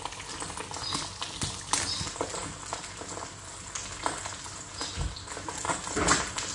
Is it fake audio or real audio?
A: real